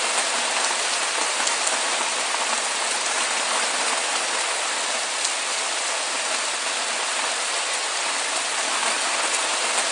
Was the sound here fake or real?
real